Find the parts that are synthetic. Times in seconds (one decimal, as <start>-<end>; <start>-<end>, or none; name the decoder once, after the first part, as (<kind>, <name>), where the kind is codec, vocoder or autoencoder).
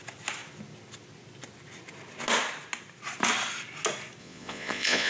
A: 4.2-5.1 (vocoder, Vocos)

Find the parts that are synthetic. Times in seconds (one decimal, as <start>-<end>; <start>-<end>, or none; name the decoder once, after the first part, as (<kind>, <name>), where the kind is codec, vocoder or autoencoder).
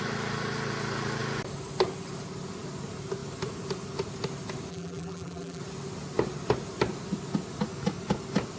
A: 4.7-5.6 (vocoder, BigVGAN v2)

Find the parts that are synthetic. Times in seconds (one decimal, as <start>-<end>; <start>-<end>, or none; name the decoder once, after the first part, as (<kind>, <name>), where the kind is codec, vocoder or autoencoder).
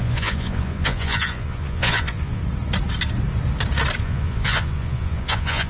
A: 0.0-2.4 (vocoder, Vocos); 4.0-5.7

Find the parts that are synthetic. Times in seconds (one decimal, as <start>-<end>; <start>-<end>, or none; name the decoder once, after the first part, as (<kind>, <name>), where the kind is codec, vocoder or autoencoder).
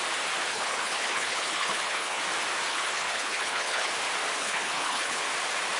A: 0.5-2.2 (codec, HILCodec); 2.7-3.9; 4.4-5.2